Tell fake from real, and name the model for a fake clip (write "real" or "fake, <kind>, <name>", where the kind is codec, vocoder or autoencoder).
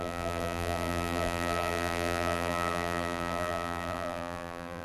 fake, vocoder, BigVGAN v2